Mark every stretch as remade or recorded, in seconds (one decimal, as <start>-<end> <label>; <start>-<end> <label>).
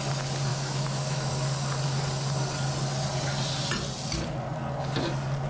0.0-0.5 recorded; 0.5-1.3 remade; 1.3-5.5 recorded